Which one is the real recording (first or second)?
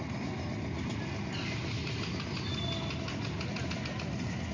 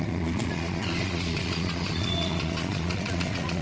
first